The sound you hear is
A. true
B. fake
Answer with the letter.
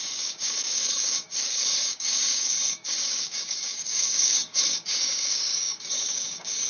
B